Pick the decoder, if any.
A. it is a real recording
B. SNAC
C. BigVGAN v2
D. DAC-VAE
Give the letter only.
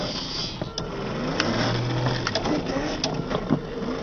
A